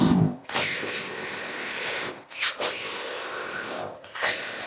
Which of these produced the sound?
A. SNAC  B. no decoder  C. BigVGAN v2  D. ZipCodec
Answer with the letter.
D